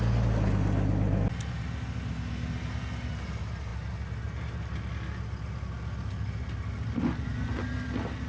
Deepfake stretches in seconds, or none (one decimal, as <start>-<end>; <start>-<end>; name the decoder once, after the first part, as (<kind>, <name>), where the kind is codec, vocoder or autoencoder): none